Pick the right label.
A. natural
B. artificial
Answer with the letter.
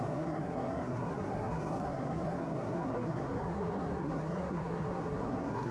B